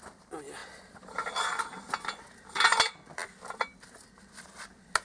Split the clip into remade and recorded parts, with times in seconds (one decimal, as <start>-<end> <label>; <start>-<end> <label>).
0.0-5.0 recorded